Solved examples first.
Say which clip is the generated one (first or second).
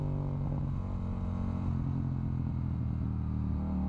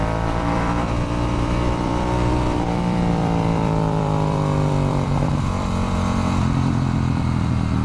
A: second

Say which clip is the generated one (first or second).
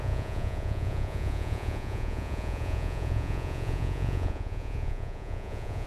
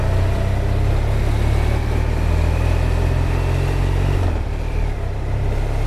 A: first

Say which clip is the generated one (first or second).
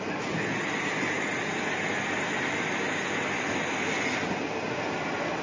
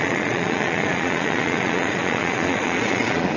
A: second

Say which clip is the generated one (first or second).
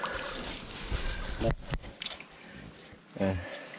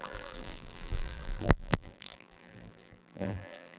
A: second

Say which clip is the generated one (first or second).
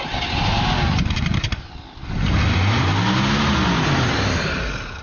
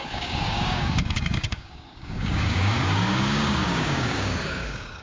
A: second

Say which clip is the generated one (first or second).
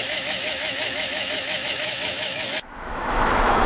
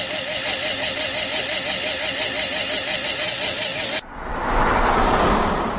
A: first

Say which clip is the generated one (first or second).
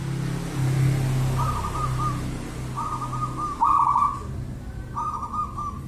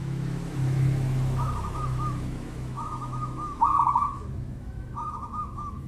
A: second